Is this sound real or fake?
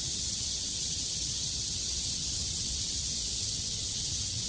fake